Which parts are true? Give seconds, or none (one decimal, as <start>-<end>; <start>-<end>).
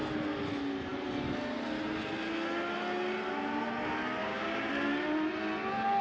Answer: 0.0-4.2; 4.7-6.0